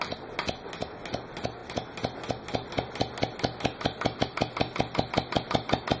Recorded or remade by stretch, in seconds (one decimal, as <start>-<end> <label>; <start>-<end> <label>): 0.0-6.0 recorded